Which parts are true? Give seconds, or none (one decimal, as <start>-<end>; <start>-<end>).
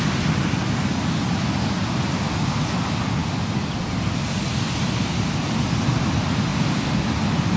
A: 0.0-7.6